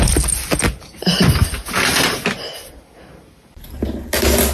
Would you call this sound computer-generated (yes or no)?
no